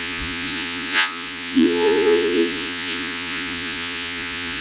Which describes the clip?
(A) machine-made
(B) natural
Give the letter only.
A